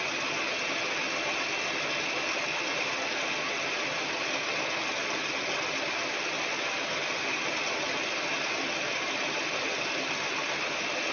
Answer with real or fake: real